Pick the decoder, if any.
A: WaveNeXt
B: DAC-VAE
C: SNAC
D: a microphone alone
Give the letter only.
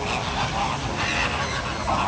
D